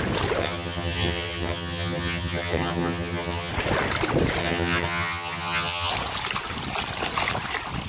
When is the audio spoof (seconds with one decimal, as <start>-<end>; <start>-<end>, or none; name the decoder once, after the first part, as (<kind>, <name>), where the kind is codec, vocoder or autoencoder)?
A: 0.4-3.5 (vocoder, HiFi-GAN); 4.4-5.9